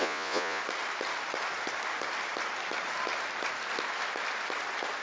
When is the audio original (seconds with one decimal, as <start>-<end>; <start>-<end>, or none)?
0.6-5.0